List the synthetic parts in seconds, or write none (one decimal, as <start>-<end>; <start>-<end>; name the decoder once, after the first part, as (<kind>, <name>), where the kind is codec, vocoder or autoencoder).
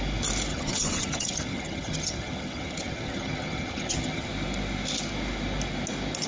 0.5-4.3 (vocoder, HiFi-GAN)